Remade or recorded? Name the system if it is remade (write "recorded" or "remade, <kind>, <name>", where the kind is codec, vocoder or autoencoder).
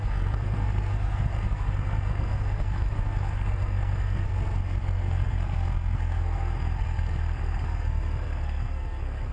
remade, codec, SNAC